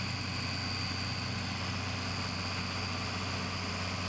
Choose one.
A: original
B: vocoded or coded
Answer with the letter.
A